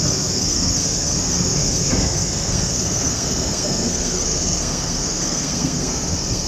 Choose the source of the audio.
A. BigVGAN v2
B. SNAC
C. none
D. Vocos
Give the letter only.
B